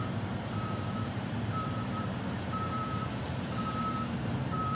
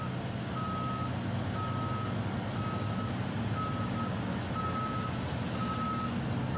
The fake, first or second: first